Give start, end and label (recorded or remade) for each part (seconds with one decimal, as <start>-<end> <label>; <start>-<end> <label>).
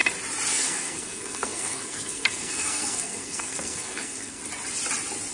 0.0-0.5 recorded; 0.5-4.4 remade; 4.4-5.3 recorded